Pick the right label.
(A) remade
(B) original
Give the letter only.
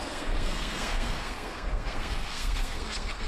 A